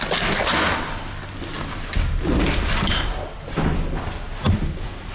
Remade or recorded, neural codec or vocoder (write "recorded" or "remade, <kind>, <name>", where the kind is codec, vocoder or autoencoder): recorded